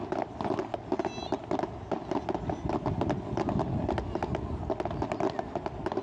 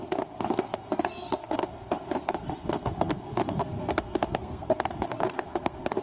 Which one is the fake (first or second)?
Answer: second